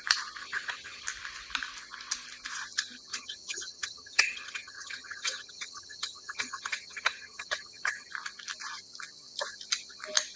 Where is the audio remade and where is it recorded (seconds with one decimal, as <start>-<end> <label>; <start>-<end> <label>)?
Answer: 0.0-0.4 recorded; 0.4-1.0 remade; 1.0-3.1 recorded; 3.1-8.1 remade; 8.1-10.4 recorded